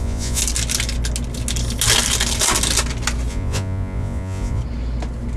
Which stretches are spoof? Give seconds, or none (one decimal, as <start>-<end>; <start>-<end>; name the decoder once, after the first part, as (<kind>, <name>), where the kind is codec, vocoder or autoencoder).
0.0-0.4 (vocoder, Vocos); 3.3-4.6